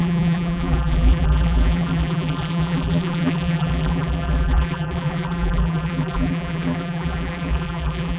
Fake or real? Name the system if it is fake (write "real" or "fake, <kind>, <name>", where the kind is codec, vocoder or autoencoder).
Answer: fake, vocoder, BigVGAN v2